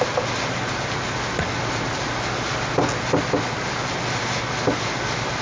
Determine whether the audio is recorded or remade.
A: recorded